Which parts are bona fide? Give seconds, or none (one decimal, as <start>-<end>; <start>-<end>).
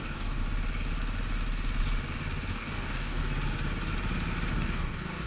0.4-2.5; 3.2-4.5